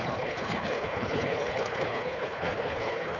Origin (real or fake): fake